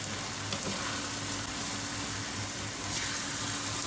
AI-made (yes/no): no